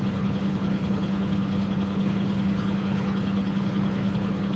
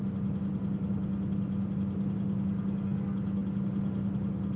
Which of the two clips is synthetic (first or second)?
first